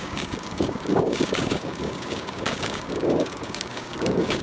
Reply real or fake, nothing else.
fake